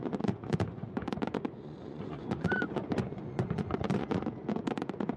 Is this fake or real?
fake